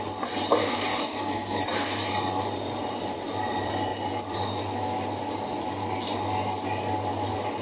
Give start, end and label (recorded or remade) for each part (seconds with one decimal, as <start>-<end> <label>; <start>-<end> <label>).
0.0-0.6 recorded; 0.6-1.6 remade; 1.6-7.6 recorded